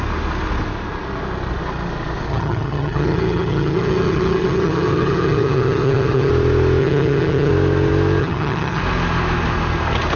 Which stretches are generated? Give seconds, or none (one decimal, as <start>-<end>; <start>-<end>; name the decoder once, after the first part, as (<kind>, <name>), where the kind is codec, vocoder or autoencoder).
2.3-6.3 (vocoder, HiFi-GAN); 6.8-7.5; 8.2-8.8